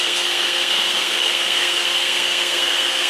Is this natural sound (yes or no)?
no